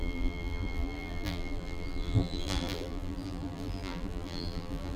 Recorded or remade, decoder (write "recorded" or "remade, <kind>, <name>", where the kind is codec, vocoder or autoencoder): remade, vocoder, BigVGAN v2